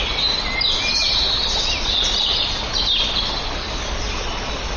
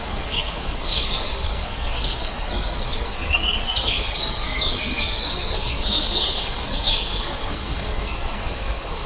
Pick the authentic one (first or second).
first